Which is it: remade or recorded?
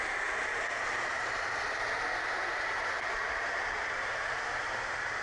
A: recorded